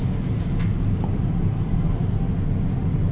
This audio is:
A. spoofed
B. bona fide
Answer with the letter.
B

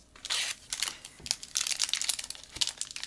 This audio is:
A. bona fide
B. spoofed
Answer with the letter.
A